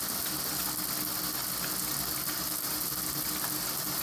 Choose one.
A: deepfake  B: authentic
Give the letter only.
B